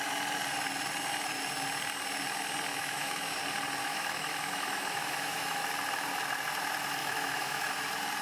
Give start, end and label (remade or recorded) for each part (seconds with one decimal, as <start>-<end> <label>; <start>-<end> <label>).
0.0-2.7 recorded; 2.7-3.4 remade; 3.4-3.8 recorded; 3.8-5.6 remade; 5.6-7.0 recorded; 7.0-7.7 remade; 7.7-8.2 recorded